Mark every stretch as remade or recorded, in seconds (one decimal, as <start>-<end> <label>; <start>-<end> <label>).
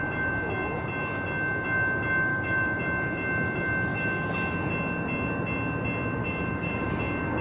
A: 0.0-2.3 recorded; 2.3-2.8 remade; 2.8-3.9 recorded; 3.9-4.5 remade; 4.5-6.2 recorded; 6.2-6.9 remade; 6.9-7.4 recorded